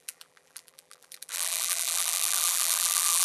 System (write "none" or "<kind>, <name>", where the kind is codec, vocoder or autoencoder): vocoder, BigVGAN v2